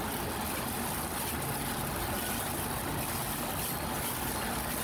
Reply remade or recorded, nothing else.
recorded